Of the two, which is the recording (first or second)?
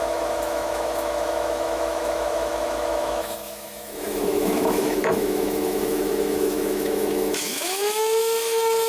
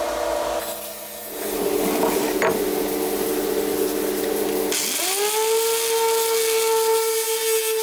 second